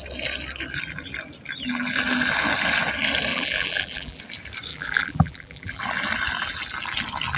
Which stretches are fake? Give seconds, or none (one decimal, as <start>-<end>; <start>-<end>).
3.3-4.2; 4.7-5.8